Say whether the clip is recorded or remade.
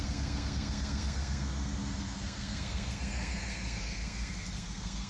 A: remade